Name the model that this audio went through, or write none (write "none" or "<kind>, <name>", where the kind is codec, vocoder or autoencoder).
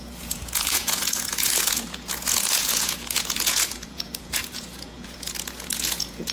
vocoder, Vocos